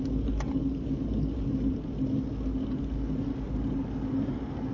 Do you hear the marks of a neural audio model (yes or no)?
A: no